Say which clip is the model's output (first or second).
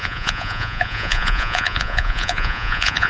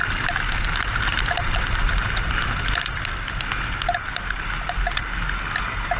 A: first